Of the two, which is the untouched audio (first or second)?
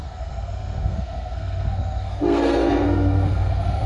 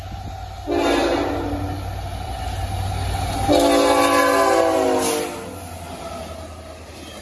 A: second